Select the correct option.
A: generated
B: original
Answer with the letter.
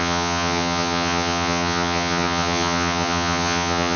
A